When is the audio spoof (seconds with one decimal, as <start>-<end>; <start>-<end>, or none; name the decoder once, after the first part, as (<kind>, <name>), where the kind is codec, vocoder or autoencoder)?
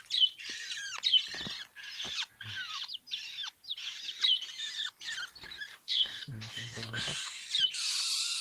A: 5.7-7.4 (codec, DAC)